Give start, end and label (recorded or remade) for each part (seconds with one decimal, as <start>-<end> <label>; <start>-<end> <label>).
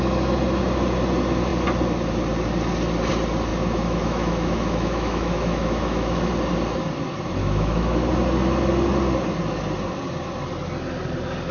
0.0-3.5 recorded; 3.5-6.3 remade; 6.3-7.4 recorded; 7.4-8.1 remade; 8.1-11.5 recorded